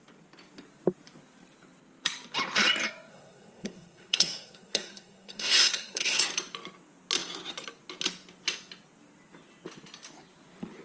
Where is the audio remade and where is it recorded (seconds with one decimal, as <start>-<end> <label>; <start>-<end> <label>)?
0.0-3.1 recorded; 3.1-6.2 remade; 6.2-10.8 recorded